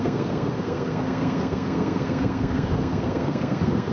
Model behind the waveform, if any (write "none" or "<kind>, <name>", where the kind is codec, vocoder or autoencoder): codec, SNAC